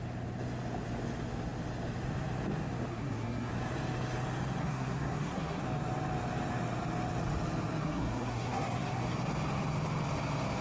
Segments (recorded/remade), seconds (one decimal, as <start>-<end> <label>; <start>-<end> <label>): 0.0-2.9 recorded; 2.9-3.5 remade; 3.5-4.6 recorded; 4.6-5.6 remade; 5.6-7.8 recorded; 7.8-9.0 remade; 9.0-10.6 recorded